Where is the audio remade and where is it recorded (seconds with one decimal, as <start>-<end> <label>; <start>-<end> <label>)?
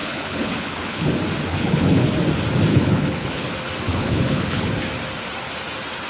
0.0-1.1 remade; 1.1-1.5 recorded; 1.5-2.1 remade; 2.1-2.7 recorded; 2.7-3.5 remade; 3.5-3.9 recorded; 3.9-4.7 remade; 4.7-6.1 recorded